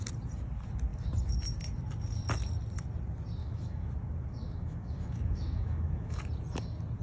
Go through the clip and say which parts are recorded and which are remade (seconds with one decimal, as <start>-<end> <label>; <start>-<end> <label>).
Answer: 0.0-3.4 recorded; 3.4-3.9 remade; 3.9-4.3 recorded; 4.3-6.2 remade; 6.2-7.0 recorded